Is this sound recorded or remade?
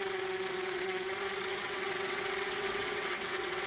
remade